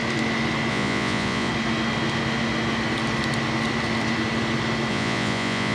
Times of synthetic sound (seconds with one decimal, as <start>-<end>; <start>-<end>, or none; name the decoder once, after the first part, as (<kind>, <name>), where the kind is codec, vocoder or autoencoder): 0.7-1.5 (vocoder, Vocos); 4.9-5.7